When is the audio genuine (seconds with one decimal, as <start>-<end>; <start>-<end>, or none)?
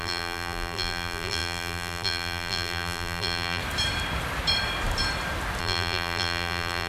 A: 3.6-5.6